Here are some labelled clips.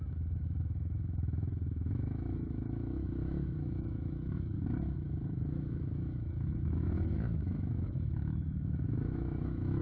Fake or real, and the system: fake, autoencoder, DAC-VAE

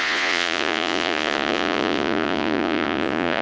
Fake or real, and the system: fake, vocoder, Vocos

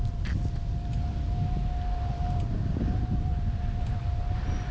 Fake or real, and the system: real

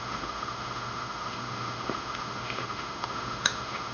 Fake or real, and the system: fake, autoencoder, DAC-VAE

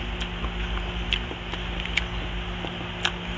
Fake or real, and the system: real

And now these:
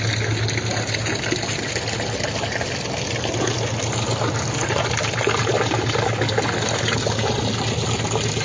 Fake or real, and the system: real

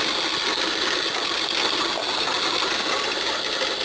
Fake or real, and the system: real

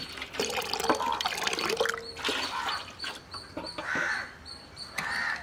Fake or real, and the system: real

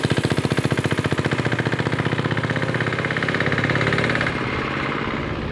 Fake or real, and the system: real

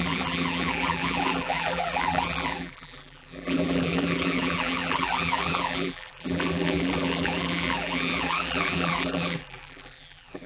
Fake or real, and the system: fake, vocoder, BigVGAN v2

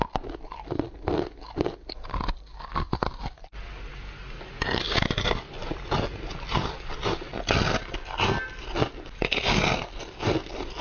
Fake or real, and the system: real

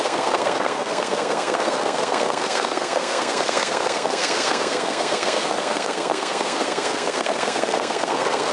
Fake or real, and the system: fake, codec, SNAC